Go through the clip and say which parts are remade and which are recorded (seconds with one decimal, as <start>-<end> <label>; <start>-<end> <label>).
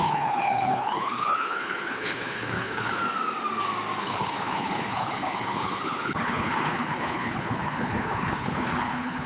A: 0.0-3.0 remade; 3.0-4.0 recorded; 4.0-9.3 remade